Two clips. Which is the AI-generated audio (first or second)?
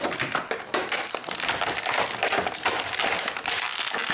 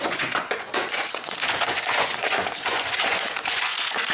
second